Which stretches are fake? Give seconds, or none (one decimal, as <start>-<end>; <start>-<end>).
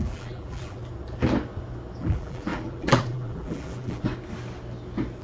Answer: 0.0-0.8; 2.0-4.1